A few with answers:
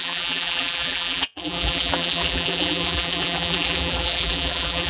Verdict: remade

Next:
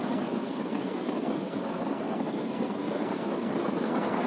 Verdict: remade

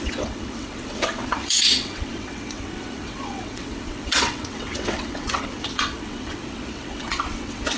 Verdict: remade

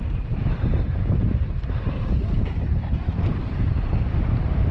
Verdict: remade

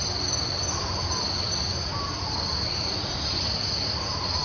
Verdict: recorded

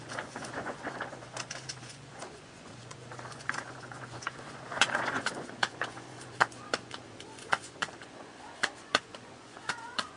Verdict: remade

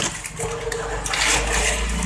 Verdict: recorded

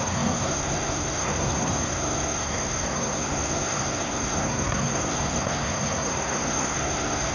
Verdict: remade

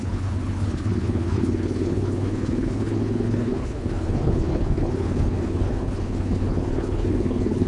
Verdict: remade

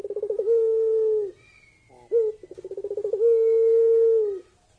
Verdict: recorded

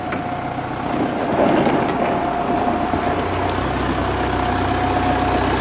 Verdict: recorded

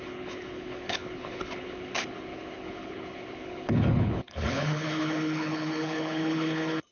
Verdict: remade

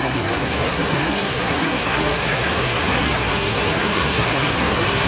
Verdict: remade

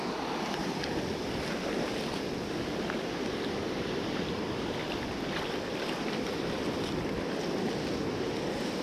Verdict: recorded